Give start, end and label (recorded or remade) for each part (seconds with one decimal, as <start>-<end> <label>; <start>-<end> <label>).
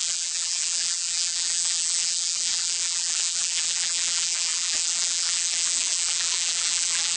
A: 0.0-7.2 remade